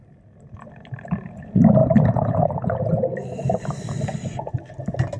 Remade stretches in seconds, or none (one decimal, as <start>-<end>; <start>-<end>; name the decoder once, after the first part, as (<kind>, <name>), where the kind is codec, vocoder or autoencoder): none